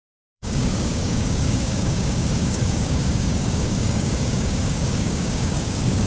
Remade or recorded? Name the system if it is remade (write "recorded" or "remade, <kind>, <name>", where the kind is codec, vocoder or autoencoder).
remade, codec, DAC